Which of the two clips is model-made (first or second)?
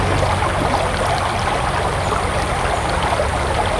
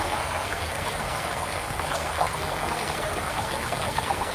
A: second